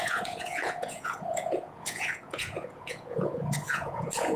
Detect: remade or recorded remade